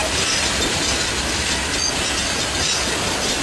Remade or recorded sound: recorded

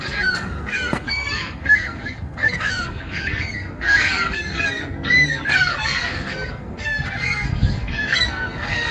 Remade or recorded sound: remade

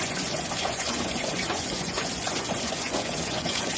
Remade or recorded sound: remade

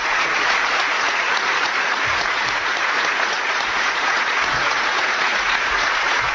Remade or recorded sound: remade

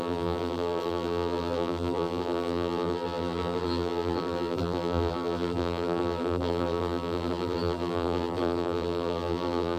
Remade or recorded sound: remade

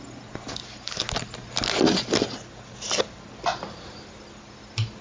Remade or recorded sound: recorded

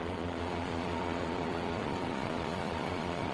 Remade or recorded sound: remade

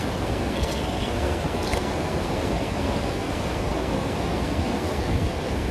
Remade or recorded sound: remade